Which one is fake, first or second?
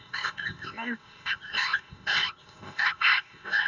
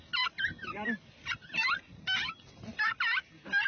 first